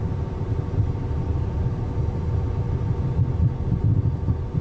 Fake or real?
real